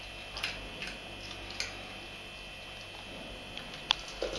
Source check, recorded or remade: recorded